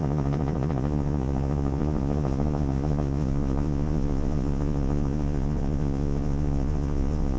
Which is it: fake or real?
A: fake